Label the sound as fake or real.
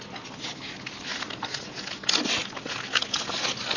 real